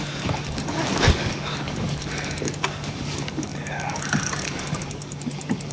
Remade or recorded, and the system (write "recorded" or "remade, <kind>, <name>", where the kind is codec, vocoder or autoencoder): remade, codec, DAC